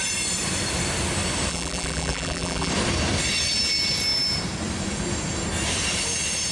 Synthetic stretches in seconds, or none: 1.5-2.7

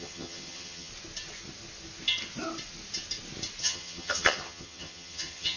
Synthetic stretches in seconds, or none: 0.0-0.9; 3.6-5.6

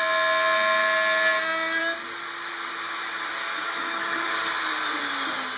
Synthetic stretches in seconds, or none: 3.4-4.3

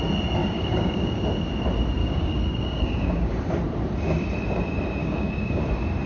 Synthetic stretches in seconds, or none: 0.4-1.2; 2.0-3.3; 5.0-5.6

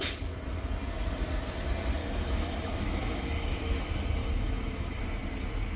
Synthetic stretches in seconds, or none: 2.0-3.7; 4.2-5.0